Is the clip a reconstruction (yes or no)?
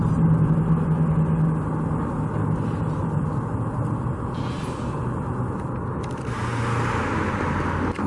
no